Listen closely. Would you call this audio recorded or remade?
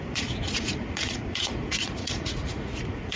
remade